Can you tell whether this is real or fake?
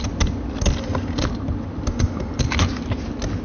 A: real